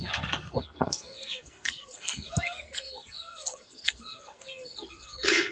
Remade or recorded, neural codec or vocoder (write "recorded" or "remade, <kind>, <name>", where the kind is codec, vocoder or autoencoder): remade, codec, SNAC